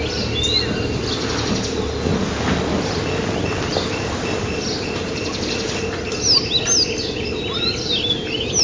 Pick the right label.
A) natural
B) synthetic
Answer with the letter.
A